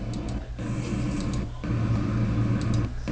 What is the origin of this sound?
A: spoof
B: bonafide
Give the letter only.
B